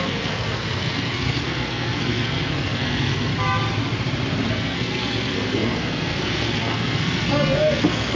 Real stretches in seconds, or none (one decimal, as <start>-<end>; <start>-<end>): 3.3-4.5